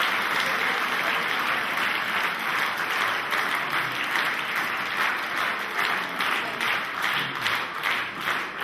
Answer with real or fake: real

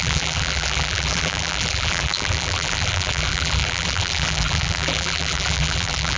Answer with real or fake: fake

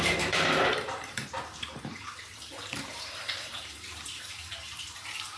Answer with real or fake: fake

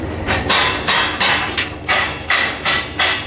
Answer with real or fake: fake